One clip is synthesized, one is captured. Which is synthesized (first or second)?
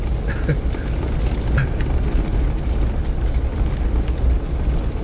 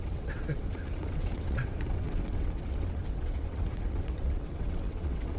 second